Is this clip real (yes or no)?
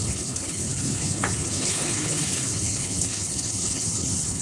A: no